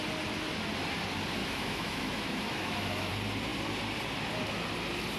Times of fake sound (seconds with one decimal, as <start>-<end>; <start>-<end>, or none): 1.4-3.1

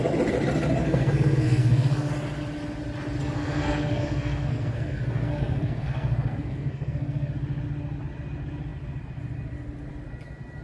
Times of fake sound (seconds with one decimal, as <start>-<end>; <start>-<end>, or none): 0.8-2.1; 3.2-7.3

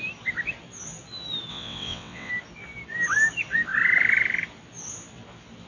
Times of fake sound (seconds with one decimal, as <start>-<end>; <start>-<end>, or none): 1.5-2.3